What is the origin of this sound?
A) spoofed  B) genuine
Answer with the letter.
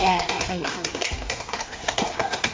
A